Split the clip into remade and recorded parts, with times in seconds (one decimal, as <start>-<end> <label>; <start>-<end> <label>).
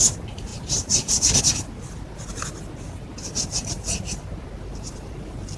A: 0.0-0.5 recorded; 0.5-1.4 remade; 1.4-5.6 recorded